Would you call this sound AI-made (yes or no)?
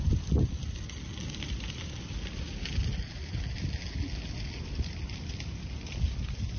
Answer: no